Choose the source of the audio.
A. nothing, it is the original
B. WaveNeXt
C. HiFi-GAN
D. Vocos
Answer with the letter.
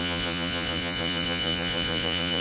D